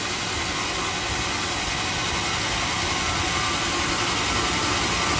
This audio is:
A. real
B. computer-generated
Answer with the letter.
A